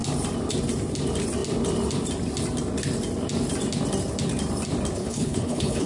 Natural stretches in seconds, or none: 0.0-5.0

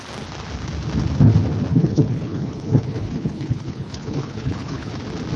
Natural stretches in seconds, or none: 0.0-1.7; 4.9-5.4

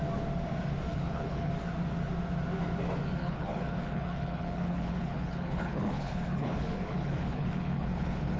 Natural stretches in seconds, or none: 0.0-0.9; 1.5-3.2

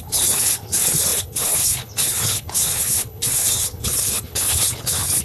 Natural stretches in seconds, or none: none

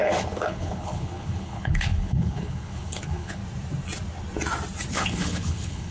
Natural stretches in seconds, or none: 3.4-4.9

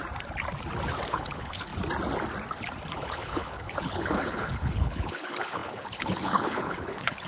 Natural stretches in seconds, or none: 0.0-1.1; 1.7-2.9

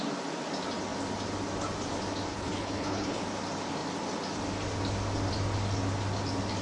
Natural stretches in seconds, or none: 0.0-2.3; 3.2-6.6